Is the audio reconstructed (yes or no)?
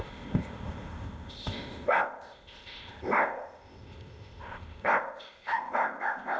yes